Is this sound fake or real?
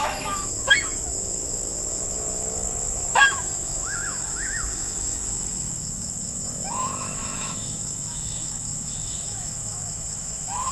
fake